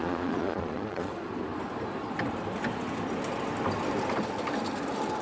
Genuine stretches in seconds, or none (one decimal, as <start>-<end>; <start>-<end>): 1.1-5.2